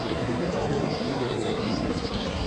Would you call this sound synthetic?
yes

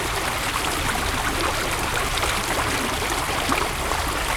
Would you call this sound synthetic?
no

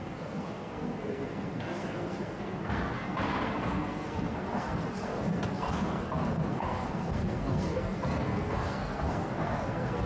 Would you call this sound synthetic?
yes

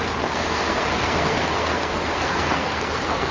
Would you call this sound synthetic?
yes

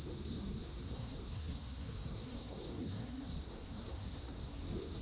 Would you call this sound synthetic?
yes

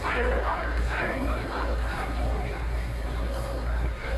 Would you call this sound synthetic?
yes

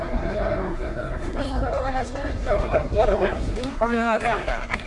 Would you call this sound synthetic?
yes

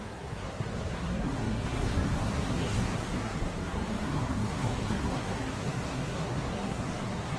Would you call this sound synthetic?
yes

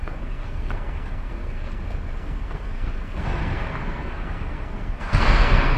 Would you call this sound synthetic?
yes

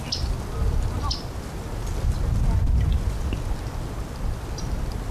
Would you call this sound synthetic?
no